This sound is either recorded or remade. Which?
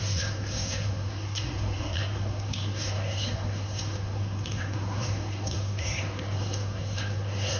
remade